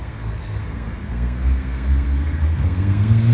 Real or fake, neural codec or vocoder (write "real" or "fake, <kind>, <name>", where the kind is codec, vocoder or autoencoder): fake, codec, SNAC